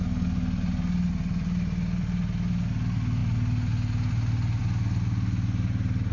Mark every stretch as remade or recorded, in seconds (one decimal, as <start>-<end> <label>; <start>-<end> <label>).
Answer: 0.0-6.1 recorded